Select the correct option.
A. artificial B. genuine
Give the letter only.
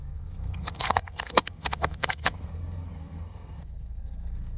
A